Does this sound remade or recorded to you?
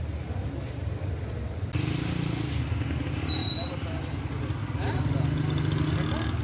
recorded